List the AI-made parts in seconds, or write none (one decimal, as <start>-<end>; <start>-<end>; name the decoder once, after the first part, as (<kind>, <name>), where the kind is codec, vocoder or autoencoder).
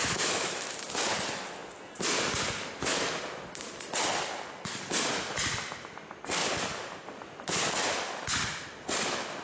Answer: 0.0-1.0 (autoencoder, DAC-VAE)